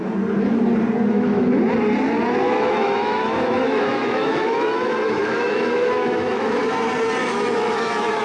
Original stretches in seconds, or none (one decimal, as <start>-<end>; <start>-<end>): 0.0-1.1; 1.6-2.4; 6.6-7.2